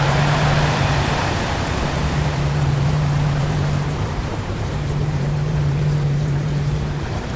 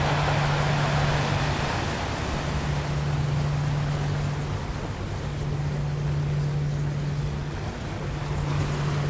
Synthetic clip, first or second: first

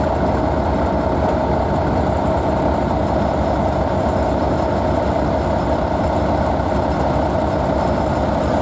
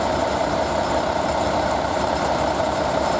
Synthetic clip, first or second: second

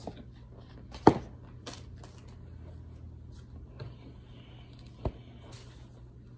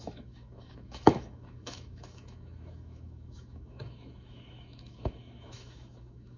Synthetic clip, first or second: second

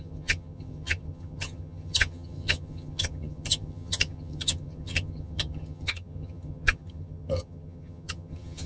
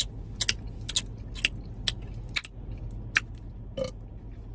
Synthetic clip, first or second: first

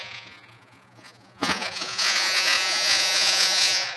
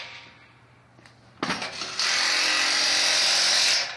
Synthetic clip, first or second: first